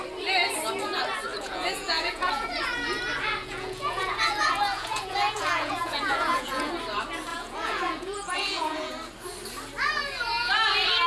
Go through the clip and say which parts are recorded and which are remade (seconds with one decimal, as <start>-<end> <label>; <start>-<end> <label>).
0.0-1.3 recorded; 1.3-2.6 remade; 2.6-3.4 recorded; 3.4-6.7 remade; 6.7-7.3 recorded; 7.3-8.9 remade; 8.9-11.1 recorded